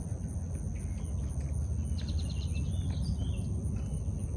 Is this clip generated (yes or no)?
no